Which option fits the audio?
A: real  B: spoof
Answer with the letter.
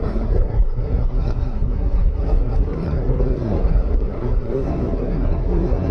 B